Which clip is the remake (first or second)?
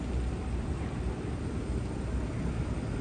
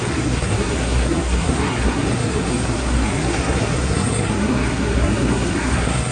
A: second